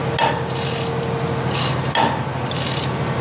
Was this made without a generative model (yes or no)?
yes